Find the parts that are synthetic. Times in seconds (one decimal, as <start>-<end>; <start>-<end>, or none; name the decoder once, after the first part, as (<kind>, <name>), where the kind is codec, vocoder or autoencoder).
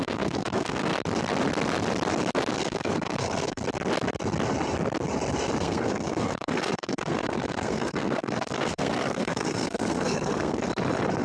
0.0-0.9 (codec, SNAC); 2.6-3.6; 5.6-10.7